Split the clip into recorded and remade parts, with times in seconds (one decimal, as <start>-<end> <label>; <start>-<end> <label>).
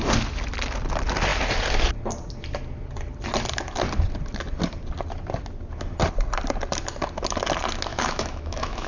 0.0-7.9 recorded; 7.9-8.9 remade